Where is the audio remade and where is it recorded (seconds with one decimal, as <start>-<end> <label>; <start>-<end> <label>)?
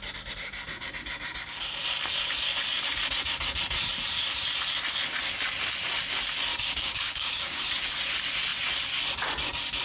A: 0.0-6.5 recorded; 6.5-7.6 remade; 7.6-9.8 recorded